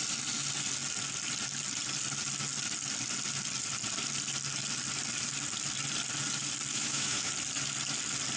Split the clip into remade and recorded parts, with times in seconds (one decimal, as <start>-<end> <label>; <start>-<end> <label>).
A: 0.0-6.7 recorded; 6.7-7.3 remade; 7.3-8.4 recorded